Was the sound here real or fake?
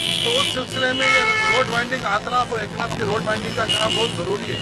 fake